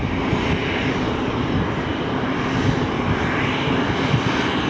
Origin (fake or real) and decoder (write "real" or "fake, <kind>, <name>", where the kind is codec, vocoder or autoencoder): real